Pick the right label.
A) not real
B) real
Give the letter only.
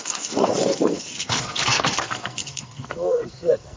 A